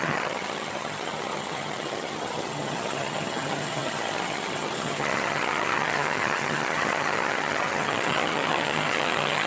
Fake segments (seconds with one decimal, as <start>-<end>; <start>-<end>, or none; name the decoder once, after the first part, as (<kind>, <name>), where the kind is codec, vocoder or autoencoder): 0.0-9.5 (vocoder, HiFi-GAN)